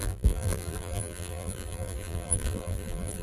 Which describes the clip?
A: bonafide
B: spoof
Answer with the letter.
B